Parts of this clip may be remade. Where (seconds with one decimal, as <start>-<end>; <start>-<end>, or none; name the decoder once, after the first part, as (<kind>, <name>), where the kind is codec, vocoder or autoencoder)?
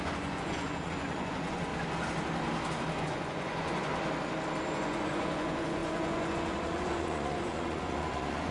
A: 0.0-1.7 (vocoder, Vocos); 3.0-3.9; 4.7-8.5